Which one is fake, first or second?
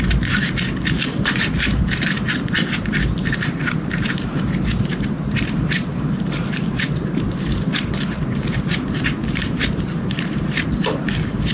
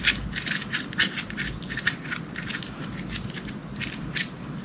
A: first